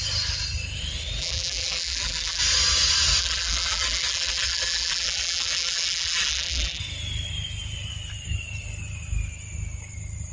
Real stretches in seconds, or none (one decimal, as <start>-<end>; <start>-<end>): 0.0-1.2; 2.4-3.2; 6.8-10.3